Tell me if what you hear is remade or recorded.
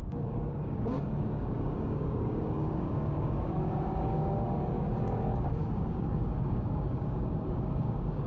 remade